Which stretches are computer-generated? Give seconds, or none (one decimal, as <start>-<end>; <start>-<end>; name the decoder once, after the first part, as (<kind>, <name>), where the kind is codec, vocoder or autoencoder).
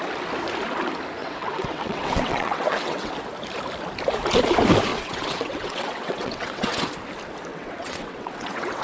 1.2-3.1 (vocoder, WaveNeXt); 4.9-6.9; 7.5-8.8